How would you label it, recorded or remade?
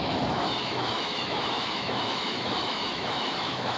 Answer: remade